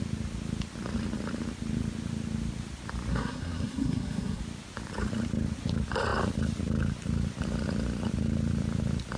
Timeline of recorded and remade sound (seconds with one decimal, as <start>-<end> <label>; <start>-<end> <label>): 0.0-3.1 recorded; 3.1-4.4 remade; 4.4-9.2 recorded